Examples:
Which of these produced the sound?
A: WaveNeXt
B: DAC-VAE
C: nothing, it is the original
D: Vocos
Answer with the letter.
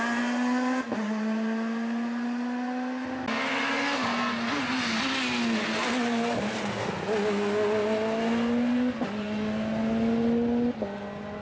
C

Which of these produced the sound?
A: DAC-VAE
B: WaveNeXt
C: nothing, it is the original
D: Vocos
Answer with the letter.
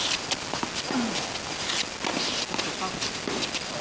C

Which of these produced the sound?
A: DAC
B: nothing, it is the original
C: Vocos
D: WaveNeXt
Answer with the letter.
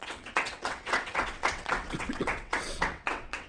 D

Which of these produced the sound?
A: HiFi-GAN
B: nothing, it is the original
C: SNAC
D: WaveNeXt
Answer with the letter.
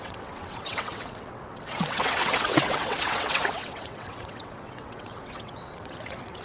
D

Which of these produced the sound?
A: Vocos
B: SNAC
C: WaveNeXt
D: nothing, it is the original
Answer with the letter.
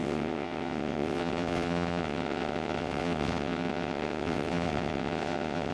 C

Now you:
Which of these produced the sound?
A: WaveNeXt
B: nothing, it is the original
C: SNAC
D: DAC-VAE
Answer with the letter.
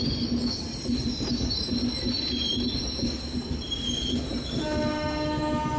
B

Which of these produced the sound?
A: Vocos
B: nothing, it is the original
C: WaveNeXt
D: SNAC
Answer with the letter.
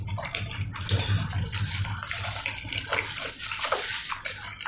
B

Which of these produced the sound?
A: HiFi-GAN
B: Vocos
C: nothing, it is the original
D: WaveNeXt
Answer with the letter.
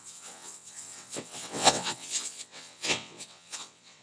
D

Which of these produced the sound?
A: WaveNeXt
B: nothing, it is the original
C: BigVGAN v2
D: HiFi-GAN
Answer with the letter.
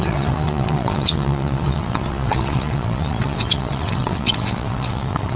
A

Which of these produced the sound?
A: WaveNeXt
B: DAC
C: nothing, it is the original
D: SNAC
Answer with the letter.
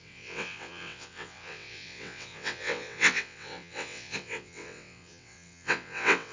A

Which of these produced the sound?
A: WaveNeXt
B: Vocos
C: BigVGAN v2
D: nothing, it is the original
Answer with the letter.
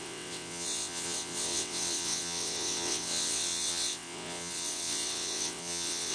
A